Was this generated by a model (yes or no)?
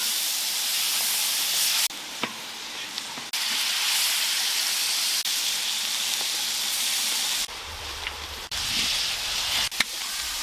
no